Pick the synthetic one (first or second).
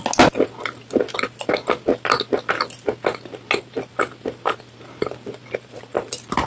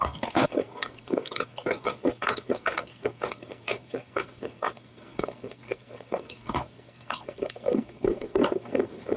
second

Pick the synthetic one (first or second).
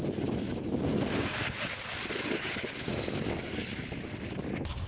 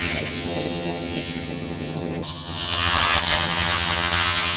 second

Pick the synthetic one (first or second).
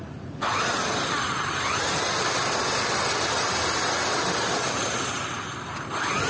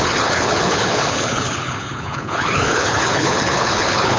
second